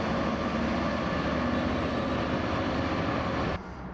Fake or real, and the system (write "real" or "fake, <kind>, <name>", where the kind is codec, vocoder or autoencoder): fake, vocoder, BigVGAN v2